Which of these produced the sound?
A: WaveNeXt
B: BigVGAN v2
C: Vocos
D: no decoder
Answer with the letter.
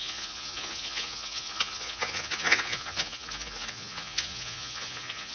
C